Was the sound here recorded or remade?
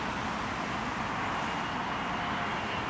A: recorded